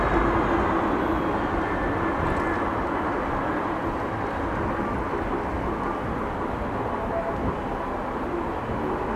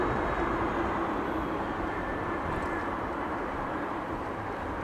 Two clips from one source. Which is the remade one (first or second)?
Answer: second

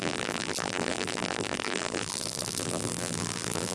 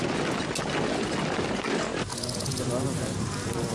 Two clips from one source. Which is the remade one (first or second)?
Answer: first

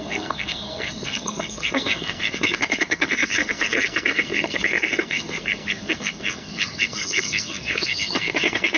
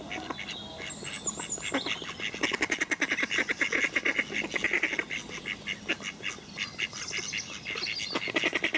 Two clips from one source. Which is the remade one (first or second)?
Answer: first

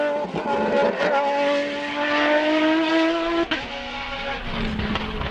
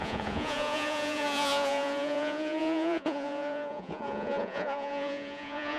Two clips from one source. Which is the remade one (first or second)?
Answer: second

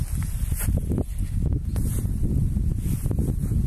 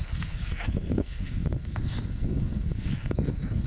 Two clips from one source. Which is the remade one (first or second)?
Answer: second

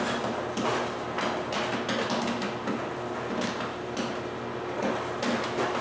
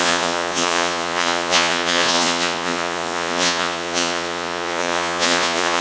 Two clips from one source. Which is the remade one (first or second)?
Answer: second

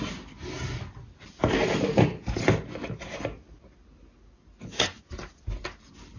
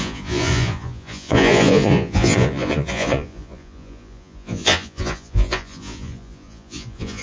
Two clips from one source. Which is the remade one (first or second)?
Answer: second